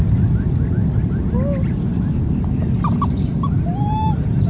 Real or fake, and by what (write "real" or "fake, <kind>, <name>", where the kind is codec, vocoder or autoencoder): real